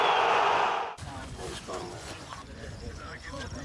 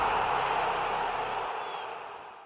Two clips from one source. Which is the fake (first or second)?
first